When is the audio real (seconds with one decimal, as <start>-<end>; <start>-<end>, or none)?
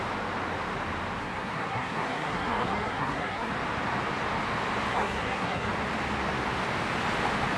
0.0-1.2; 3.5-4.9; 5.7-7.6